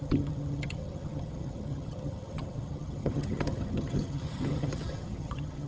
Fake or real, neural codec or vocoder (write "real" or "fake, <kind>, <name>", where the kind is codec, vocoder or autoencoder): fake, vocoder, HiFi-GAN